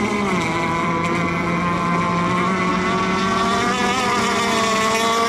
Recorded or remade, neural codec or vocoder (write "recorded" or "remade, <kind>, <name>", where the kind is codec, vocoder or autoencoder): recorded